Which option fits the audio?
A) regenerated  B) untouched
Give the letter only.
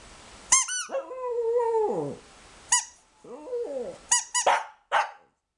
B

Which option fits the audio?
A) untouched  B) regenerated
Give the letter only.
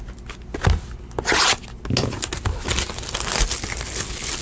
A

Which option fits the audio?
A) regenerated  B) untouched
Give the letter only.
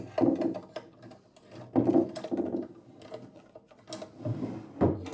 B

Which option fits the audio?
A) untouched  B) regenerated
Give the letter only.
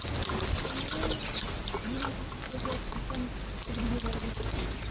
A